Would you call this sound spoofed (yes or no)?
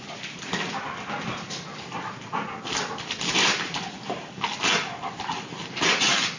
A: no